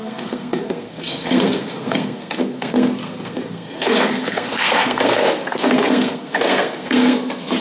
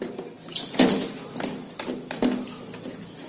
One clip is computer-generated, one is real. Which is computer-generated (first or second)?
first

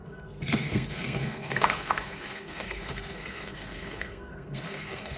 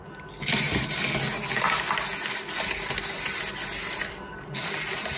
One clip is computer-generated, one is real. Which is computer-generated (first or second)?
first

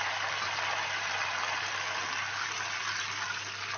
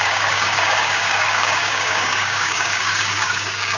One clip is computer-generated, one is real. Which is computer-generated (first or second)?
second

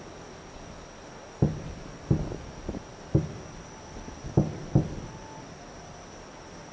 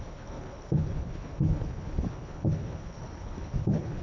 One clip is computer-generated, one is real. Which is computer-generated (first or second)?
second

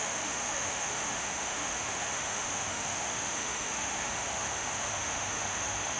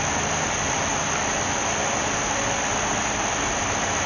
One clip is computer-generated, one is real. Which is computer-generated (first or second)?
first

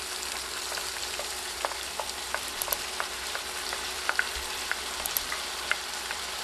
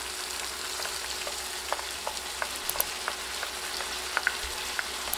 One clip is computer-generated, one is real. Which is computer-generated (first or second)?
first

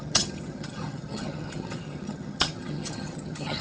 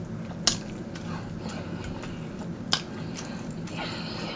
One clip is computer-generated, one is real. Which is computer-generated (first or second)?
first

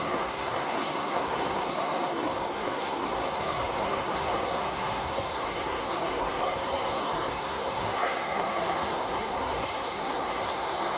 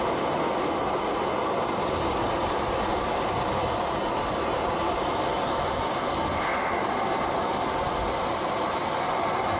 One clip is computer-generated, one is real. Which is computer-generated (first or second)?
first